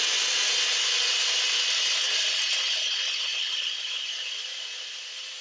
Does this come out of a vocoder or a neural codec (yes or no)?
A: no